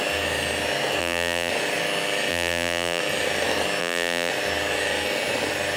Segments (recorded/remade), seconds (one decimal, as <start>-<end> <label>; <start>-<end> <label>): 0.0-1.0 recorded; 1.0-1.5 remade; 1.5-2.3 recorded; 2.3-3.0 remade; 3.0-3.8 recorded; 3.8-4.3 remade; 4.3-5.8 recorded